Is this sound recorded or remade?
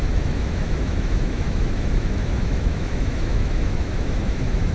remade